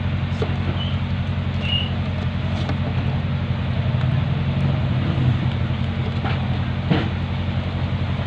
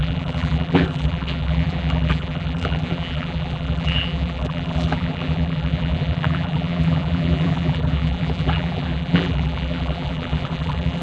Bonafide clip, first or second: first